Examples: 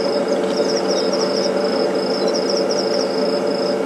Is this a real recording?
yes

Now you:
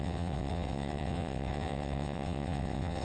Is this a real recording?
no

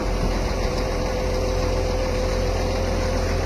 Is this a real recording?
no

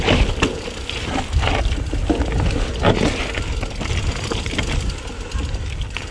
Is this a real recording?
yes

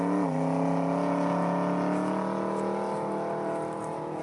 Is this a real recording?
yes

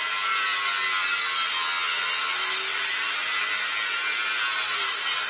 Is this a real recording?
yes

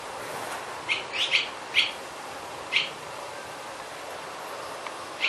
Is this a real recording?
yes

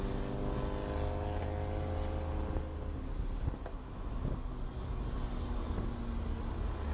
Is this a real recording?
yes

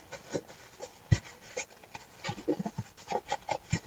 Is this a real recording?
yes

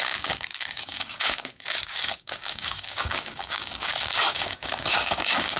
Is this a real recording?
no